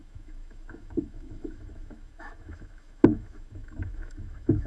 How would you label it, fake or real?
fake